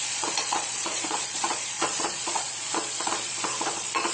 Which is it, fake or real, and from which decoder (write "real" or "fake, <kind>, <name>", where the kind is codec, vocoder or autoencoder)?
fake, vocoder, Vocos